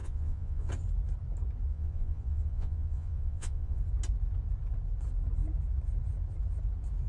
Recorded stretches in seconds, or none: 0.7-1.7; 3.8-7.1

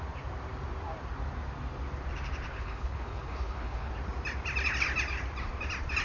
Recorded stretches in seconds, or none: 0.0-2.5; 3.9-6.0

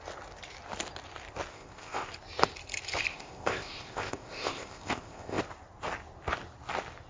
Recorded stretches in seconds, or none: 0.0-1.5; 2.1-3.1; 5.4-7.1